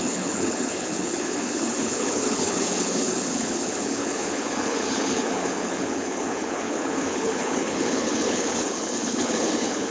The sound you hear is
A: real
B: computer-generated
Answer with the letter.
B